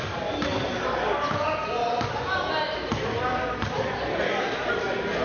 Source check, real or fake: real